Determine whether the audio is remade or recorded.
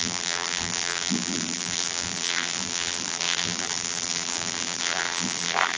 remade